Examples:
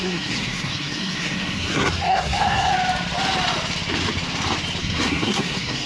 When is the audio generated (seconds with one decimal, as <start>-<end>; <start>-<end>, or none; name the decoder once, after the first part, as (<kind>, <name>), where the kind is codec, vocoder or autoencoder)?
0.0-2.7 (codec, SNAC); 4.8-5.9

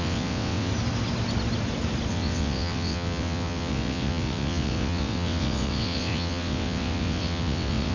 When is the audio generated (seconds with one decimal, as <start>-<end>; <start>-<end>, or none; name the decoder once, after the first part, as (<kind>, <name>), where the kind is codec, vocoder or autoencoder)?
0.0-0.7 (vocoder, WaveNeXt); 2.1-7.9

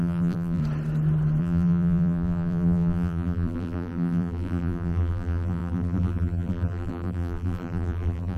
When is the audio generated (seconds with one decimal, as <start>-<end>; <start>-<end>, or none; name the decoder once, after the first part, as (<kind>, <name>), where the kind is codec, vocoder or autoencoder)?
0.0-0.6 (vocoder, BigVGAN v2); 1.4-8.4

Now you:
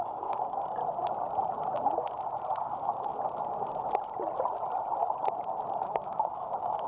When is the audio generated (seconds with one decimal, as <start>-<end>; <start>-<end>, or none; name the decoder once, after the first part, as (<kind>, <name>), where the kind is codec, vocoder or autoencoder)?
0.0-0.8 (codec, DAC); 2.5-3.1; 5.7-6.9

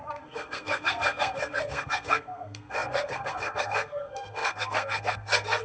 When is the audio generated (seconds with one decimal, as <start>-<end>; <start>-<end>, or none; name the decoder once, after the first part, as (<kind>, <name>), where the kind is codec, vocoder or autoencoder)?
0.0-5.6 (codec, SNAC)

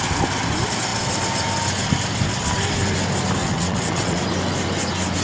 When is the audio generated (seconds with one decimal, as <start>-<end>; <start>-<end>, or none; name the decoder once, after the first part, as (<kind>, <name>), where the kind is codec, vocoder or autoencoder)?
3.4-4.2 (vocoder, WaveNeXt)

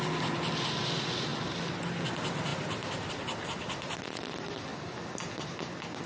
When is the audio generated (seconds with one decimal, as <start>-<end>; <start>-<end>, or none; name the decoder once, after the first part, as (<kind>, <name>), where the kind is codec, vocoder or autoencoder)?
none

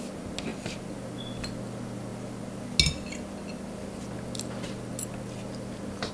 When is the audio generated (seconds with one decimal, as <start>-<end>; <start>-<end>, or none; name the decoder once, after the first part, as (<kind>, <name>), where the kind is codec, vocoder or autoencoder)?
none